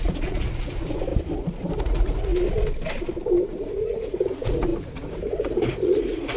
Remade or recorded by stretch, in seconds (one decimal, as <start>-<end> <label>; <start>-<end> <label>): 0.0-1.1 remade; 1.1-1.8 recorded; 1.8-2.3 remade; 2.3-3.4 recorded; 3.4-6.4 remade